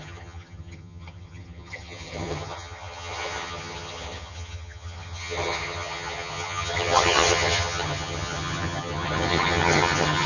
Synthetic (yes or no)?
yes